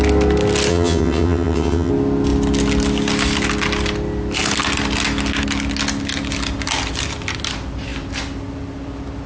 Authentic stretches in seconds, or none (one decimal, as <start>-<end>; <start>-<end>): 0.0-0.7; 1.9-9.3